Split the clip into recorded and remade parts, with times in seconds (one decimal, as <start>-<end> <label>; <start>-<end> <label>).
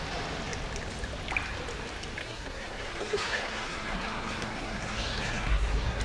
0.0-2.2 recorded; 2.2-6.0 remade